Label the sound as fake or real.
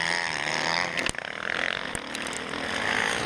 real